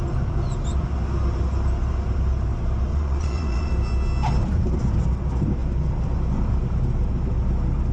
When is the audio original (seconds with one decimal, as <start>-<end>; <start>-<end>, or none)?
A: 0.0-2.9; 3.7-7.9